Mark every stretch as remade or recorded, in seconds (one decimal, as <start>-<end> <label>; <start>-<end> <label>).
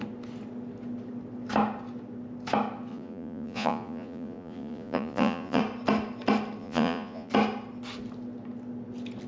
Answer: 0.0-2.9 recorded; 2.9-5.6 remade; 5.6-6.6 recorded; 6.6-7.3 remade; 7.3-9.3 recorded